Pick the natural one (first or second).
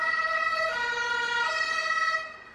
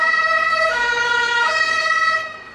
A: first